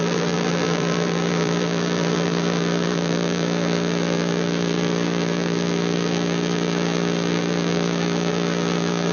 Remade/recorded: remade